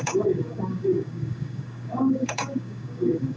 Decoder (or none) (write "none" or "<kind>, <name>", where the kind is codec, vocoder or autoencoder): codec, DAC